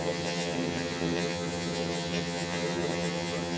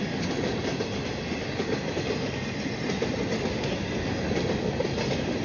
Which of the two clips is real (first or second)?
second